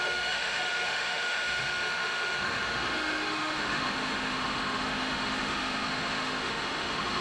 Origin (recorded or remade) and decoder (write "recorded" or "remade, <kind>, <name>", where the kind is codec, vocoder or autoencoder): remade, autoencoder, DAC-VAE